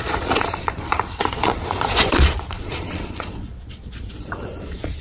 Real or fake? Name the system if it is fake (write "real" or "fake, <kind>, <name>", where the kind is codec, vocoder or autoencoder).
fake, vocoder, Vocos